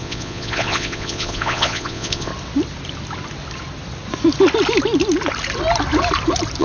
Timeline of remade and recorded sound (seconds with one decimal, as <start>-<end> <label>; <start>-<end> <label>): 0.0-2.3 remade; 2.3-6.6 recorded